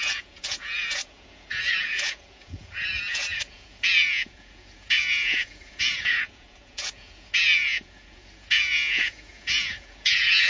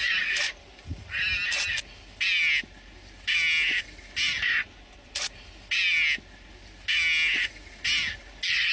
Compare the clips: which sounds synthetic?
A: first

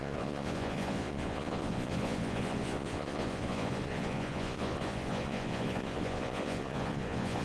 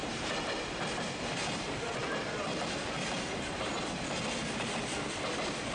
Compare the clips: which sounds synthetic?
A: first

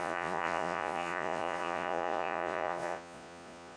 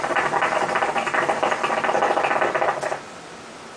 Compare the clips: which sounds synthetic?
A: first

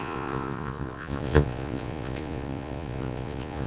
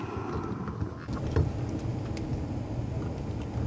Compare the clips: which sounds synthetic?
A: first